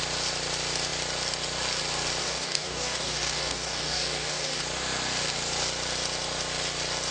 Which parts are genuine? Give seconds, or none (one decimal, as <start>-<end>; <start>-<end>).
0.0-2.2; 4.6-7.1